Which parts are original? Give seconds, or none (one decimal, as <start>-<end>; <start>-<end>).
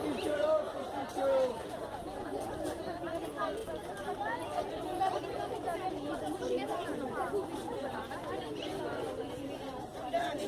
0.0-1.6; 2.5-10.5